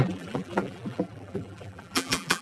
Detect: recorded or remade remade